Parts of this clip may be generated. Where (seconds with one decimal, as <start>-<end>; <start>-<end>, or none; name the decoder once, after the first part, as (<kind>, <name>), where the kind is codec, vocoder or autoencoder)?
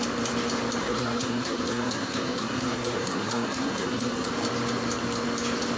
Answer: 0.8-4.3 (codec, SNAC)